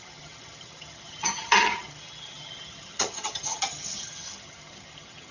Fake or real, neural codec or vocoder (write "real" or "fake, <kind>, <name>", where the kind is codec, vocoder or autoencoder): fake, vocoder, HiFi-GAN